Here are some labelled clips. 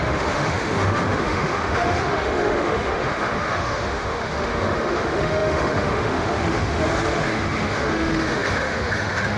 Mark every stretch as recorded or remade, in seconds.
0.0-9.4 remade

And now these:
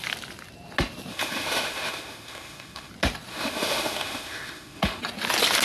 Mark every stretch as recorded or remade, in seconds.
0.0-1.1 recorded; 1.1-2.9 remade; 2.9-3.3 recorded; 3.3-5.0 remade; 5.0-5.6 recorded

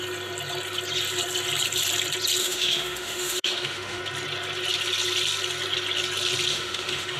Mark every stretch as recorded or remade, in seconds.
0.0-2.4 recorded; 2.4-4.0 remade; 4.0-6.5 recorded; 6.5-7.2 remade